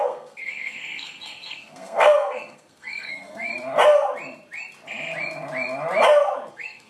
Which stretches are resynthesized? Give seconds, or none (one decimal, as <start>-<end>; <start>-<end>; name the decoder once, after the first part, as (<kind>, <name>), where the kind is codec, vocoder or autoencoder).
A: 0.0-3.5 (codec, SNAC); 6.5-6.9

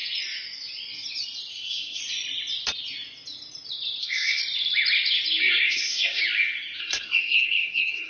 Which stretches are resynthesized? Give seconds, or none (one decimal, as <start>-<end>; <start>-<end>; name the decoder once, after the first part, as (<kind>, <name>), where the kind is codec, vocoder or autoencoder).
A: 1.5-2.0 (codec, SNAC); 4.0-4.4; 5.4-6.2; 6.8-8.1

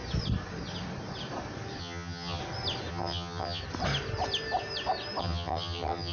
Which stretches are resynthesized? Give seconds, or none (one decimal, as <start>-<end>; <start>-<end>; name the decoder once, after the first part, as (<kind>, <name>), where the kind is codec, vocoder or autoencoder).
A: 1.8-2.4 (vocoder, HiFi-GAN); 2.9-3.6; 5.2-6.1

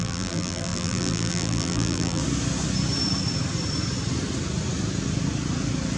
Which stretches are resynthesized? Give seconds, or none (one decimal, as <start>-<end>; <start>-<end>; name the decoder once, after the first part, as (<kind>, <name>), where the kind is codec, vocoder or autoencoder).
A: 0.0-2.2 (vocoder, BigVGAN v2)

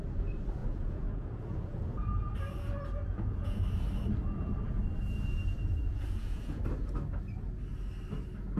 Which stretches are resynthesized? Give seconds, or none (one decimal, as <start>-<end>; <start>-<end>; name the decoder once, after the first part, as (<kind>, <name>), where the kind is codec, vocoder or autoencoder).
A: 0.6-2.3 (vocoder, Vocos); 3.1-3.6; 5.9-6.6